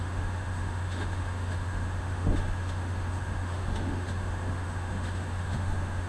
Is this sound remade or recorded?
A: remade